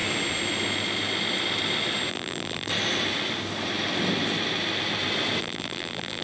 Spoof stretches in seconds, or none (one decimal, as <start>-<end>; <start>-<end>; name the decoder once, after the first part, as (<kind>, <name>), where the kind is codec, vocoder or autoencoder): 2.1-2.7 (vocoder, BigVGAN v2); 5.4-6.2